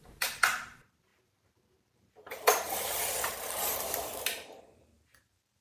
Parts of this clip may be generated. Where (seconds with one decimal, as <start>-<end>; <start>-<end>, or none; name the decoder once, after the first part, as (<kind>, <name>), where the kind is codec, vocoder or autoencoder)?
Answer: 0.0-5.6 (vocoder, BigVGAN v2)